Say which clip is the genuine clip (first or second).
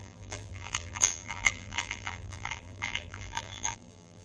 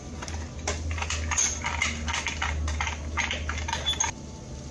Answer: second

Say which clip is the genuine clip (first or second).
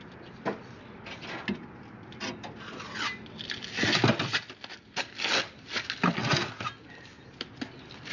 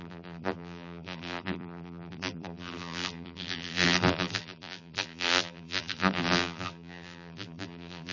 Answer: first